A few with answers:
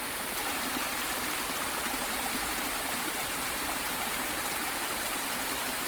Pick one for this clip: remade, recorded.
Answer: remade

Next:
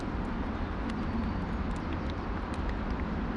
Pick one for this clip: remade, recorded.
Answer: recorded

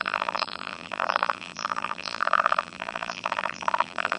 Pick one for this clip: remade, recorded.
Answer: remade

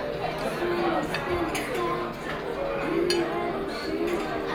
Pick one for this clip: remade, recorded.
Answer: recorded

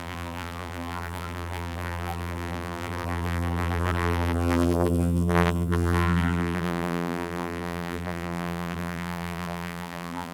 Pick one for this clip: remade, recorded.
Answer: remade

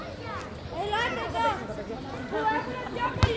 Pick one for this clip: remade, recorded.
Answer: recorded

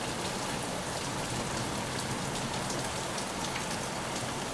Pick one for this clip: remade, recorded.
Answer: recorded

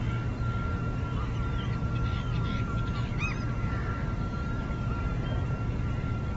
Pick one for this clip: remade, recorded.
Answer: recorded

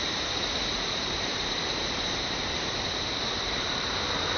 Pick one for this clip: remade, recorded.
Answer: remade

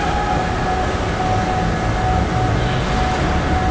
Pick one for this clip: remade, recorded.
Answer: recorded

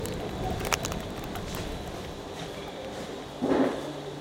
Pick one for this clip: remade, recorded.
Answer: remade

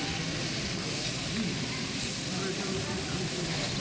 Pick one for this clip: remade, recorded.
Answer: recorded